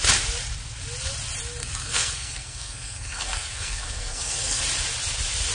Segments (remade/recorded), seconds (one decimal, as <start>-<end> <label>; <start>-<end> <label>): 0.0-1.6 recorded; 1.6-4.6 remade; 4.6-5.5 recorded